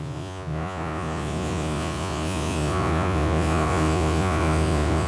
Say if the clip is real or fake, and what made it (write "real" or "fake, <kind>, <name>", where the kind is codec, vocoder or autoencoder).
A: fake, vocoder, Vocos